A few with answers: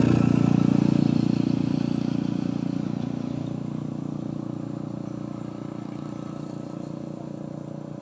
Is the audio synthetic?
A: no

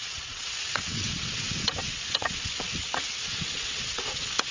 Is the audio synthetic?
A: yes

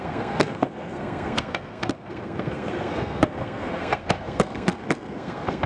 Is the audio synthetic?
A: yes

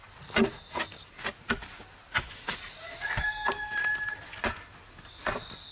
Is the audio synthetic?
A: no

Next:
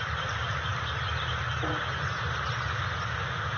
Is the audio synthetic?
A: no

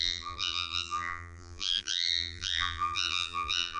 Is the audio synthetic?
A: yes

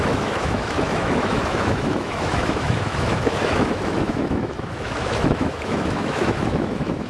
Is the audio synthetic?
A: yes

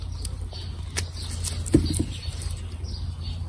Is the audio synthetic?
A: no